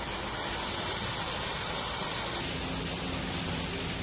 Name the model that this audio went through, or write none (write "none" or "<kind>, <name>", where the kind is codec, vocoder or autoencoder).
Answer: none